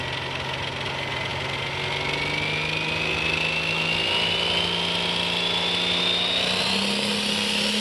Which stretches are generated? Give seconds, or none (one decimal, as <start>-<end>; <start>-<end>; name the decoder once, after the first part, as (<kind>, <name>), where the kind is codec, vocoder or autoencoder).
none